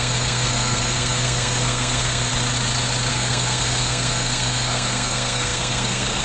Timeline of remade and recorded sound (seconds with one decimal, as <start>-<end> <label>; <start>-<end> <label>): 0.0-2.3 remade; 2.3-3.1 recorded; 3.1-6.2 remade